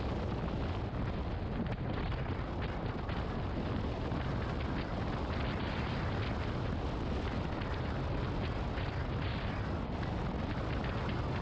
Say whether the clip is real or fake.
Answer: real